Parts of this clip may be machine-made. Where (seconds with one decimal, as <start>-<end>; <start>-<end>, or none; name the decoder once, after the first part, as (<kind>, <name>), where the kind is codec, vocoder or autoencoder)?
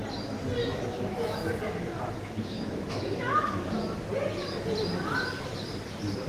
0.6-4.0 (autoencoder, DAC-VAE)